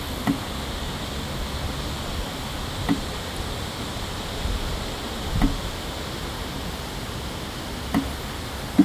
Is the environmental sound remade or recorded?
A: recorded